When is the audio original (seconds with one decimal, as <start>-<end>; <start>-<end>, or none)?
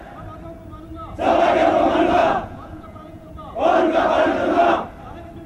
0.0-2.2; 3.3-5.5